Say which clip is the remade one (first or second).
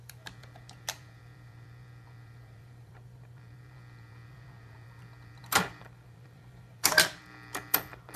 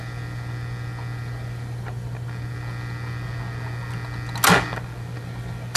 first